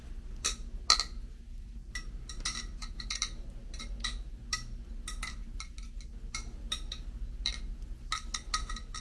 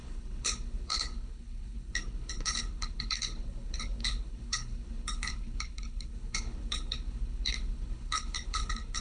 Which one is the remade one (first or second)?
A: second